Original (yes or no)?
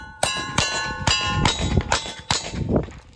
no